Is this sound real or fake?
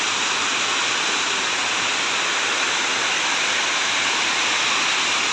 real